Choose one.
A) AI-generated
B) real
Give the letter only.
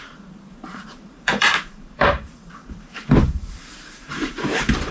A